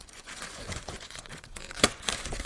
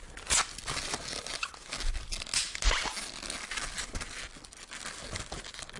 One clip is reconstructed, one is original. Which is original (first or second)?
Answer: second